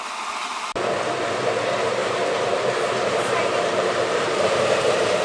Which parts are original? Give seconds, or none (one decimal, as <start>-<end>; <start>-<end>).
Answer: 0.0-2.0